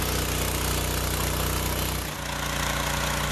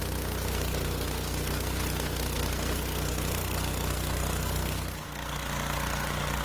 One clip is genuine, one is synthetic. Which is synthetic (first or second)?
second